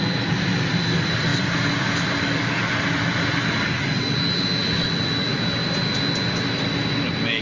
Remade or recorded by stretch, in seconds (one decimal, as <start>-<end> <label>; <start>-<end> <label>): 0.0-7.4 recorded